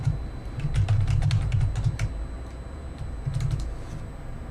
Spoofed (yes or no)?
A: no